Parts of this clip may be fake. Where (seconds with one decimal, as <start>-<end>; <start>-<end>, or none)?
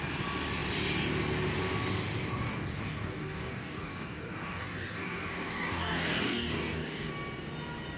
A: 2.3-7.1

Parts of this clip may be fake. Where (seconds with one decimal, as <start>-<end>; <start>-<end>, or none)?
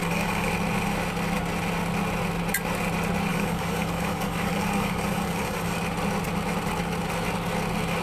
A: 0.0-0.5; 3.3-5.8